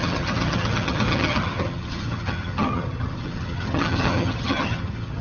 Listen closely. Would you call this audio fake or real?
fake